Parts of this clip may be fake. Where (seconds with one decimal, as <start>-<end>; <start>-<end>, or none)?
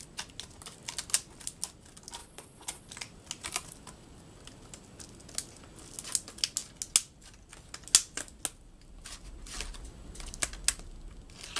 2.2-2.9